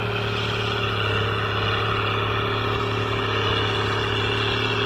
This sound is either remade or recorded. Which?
recorded